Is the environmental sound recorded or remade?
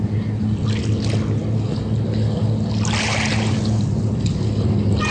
recorded